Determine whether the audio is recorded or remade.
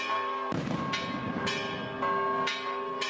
recorded